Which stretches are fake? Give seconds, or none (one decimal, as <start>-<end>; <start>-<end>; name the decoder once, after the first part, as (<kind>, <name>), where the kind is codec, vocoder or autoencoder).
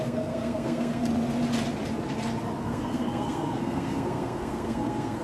0.0-1.0 (codec, SNAC); 2.6-5.2